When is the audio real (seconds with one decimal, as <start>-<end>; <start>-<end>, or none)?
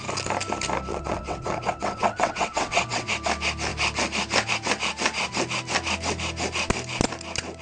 0.0-0.9; 3.1-7.6